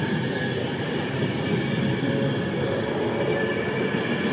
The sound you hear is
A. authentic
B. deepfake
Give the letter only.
A